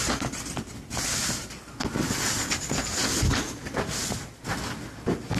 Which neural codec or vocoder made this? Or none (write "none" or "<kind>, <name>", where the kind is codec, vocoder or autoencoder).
none